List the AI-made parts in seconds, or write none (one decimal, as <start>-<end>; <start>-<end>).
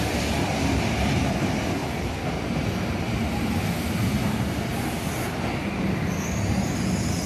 none